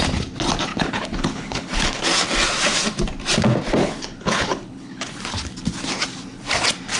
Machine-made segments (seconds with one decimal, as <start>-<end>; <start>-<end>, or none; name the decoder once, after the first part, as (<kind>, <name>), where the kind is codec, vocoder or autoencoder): 0.7-2.0 (codec, HILCodec); 3.8-5.1